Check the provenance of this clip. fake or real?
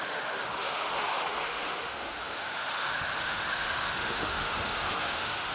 fake